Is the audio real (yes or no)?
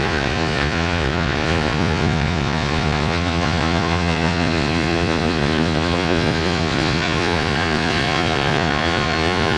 no